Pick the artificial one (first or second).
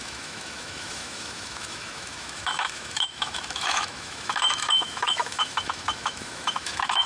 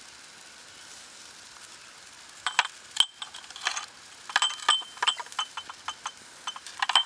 first